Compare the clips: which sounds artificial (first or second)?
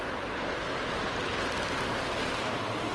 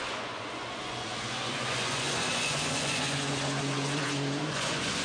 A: second